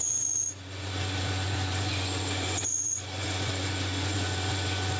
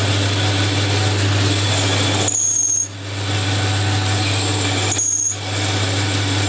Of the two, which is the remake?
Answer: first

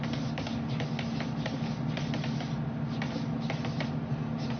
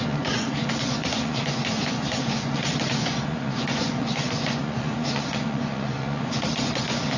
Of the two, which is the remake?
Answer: second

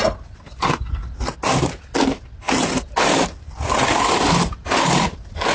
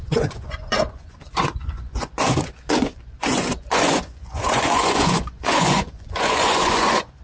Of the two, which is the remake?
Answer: second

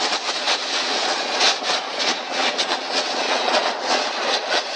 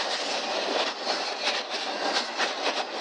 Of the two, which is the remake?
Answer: first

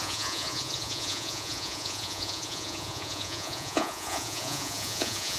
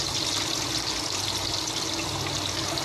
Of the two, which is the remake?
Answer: first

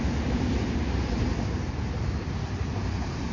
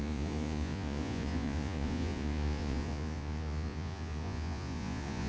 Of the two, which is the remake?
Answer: second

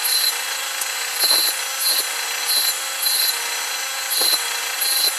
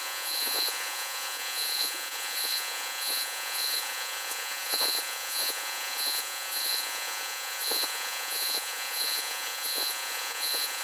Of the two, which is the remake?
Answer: second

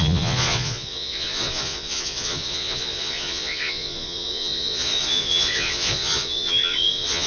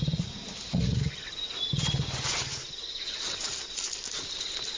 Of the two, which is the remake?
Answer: first